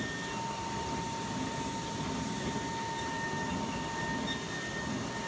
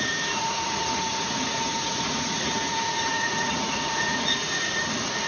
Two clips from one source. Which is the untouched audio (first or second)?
first